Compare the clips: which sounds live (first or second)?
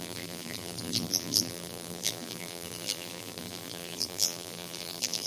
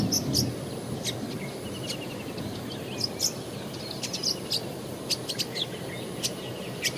second